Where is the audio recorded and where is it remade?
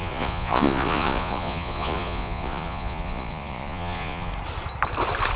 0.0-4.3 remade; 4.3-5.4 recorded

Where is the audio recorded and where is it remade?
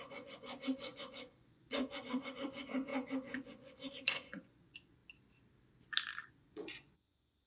0.0-5.0 remade; 5.0-6.3 recorded; 6.3-7.5 remade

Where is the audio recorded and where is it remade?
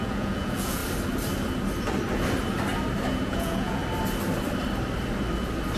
0.0-0.8 remade; 0.8-3.1 recorded; 3.1-3.8 remade; 3.8-5.8 recorded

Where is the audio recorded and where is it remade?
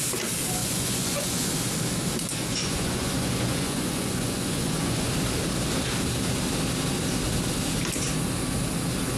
0.0-0.6 recorded; 0.6-1.5 remade; 1.5-2.3 recorded; 2.3-5.1 remade; 5.1-9.2 recorded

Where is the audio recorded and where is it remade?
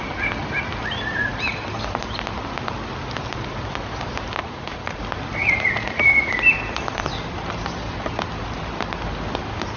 0.0-4.4 recorded; 4.4-5.0 remade; 5.0-5.4 recorded; 5.4-6.3 remade; 6.3-9.8 recorded